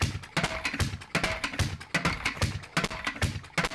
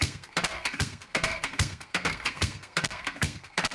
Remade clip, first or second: second